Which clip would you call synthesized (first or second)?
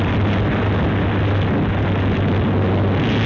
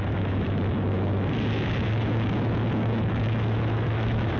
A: second